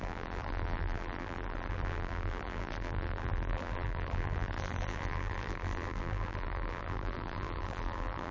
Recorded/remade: remade